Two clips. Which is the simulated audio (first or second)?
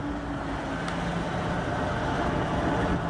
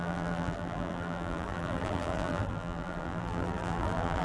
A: second